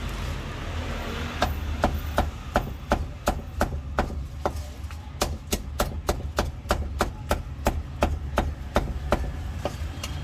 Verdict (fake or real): real